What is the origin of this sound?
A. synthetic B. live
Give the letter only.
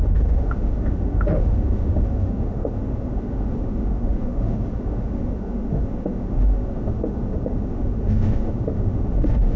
A